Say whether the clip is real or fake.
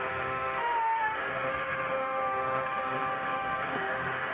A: fake